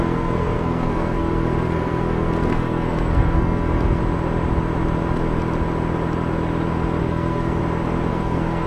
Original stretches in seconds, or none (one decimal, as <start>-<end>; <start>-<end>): 4.0-7.0; 7.6-8.1